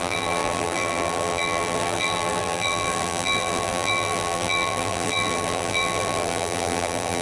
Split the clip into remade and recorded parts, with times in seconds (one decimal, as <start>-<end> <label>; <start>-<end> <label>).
0.0-7.2 remade